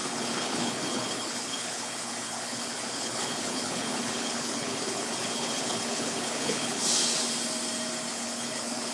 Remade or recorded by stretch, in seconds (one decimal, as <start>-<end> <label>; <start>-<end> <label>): 0.0-6.8 remade; 6.8-8.1 recorded; 8.1-8.9 remade